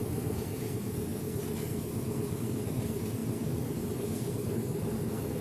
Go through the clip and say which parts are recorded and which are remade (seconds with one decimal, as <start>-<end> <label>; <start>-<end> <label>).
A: 0.0-5.4 remade